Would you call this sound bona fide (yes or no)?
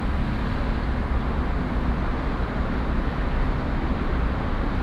yes